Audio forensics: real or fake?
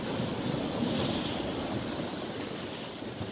real